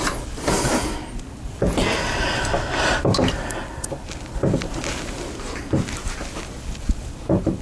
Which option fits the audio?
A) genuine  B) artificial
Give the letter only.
A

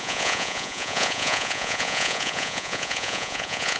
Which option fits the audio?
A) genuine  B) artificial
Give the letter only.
B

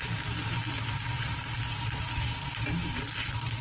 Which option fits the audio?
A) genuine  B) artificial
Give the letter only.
A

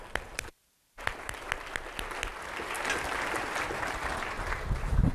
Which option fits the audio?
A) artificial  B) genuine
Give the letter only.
B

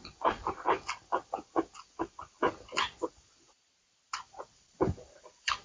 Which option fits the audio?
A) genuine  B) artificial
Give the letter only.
B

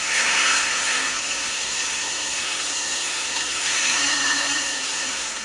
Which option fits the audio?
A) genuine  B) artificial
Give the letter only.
B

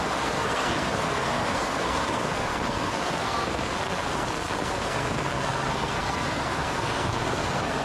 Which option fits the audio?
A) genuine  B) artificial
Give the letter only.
B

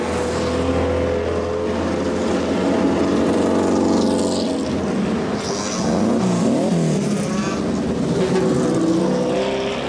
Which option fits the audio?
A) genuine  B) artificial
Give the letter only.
A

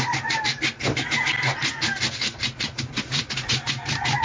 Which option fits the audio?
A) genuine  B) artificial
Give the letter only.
A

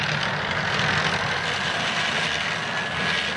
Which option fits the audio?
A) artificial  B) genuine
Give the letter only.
B